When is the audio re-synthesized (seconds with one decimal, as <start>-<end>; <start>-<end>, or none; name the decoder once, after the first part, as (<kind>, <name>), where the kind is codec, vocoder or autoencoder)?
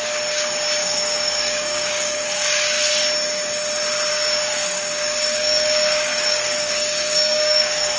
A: 0.8-2.9 (codec, DAC); 4.1-8.0